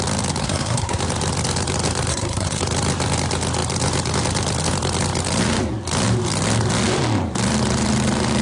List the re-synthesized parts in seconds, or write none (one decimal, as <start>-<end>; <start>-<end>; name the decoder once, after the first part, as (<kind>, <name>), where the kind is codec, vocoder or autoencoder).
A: 0.4-1.0 (codec, SNAC); 2.1-2.6